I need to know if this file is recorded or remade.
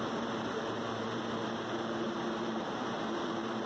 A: remade